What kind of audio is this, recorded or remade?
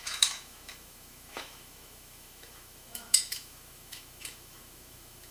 remade